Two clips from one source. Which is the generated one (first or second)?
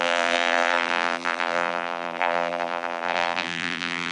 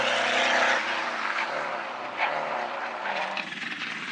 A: first